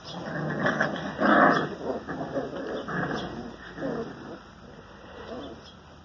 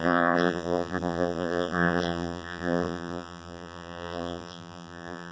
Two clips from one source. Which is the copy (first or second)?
second